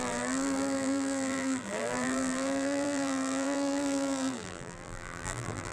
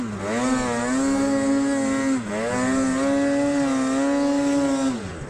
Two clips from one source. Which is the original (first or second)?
second